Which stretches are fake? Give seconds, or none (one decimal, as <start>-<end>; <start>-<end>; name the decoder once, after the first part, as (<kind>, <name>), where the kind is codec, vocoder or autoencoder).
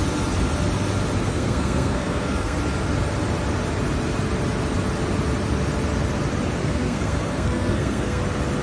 1.2-2.6 (codec, SNAC); 6.6-8.2